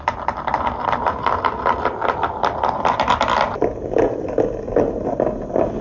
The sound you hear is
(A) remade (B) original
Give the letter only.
B